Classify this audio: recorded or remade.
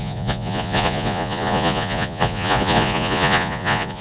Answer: remade